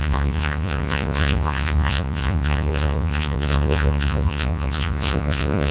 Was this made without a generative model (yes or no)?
no